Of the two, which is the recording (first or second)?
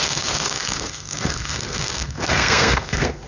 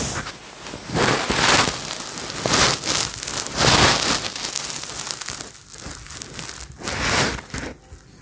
second